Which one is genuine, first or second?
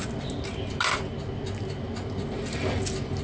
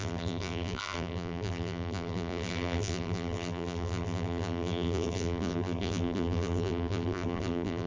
first